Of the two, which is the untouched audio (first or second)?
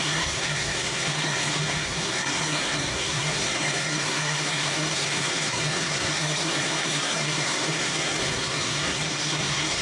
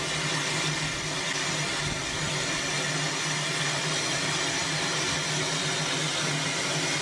second